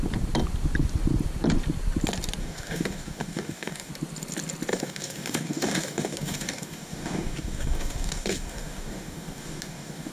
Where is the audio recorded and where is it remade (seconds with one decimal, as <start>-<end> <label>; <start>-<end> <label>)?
0.0-2.4 recorded; 2.4-3.9 remade; 3.9-4.7 recorded; 4.7-10.1 remade